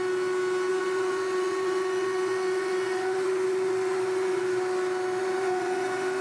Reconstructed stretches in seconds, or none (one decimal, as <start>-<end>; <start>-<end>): 0.7-4.4; 5.2-6.2